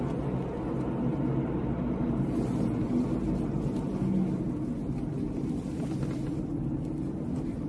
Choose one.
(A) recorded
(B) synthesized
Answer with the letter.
A